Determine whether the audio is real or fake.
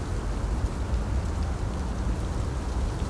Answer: real